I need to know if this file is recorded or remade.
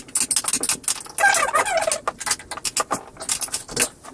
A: recorded